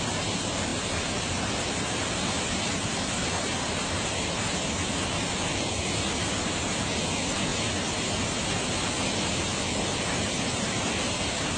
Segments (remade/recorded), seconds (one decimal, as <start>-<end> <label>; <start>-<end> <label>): 0.0-11.6 recorded